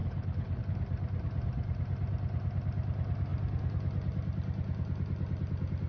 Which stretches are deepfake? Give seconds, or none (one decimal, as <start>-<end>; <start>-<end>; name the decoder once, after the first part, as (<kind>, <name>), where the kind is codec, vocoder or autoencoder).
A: 0.0-0.6 (codec, HILCodec)